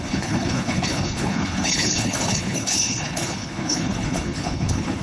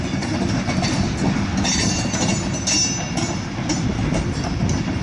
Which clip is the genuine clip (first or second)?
second